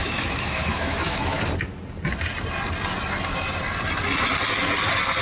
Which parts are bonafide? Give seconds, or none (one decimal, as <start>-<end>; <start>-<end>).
1.4-5.2